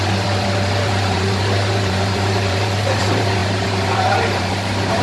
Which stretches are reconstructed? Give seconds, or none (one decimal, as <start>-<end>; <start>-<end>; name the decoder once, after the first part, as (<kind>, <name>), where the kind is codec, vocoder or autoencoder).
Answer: 0.0-5.0 (vocoder, BigVGAN v2)